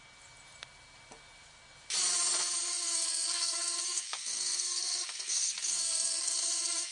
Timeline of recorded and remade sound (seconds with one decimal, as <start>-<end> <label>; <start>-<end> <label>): 0.0-2.7 recorded; 2.7-6.9 remade